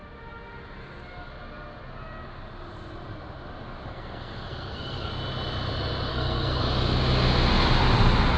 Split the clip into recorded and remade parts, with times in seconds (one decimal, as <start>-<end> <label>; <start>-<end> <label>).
0.0-3.9 recorded; 3.9-5.1 remade; 5.1-6.1 recorded; 6.1-6.6 remade; 6.6-8.4 recorded